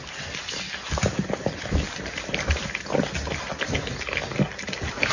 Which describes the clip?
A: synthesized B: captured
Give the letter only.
B